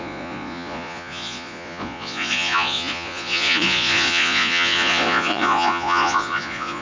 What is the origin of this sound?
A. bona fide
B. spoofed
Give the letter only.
B